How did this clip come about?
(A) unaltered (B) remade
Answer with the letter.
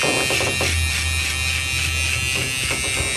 A